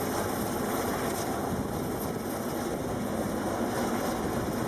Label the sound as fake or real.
real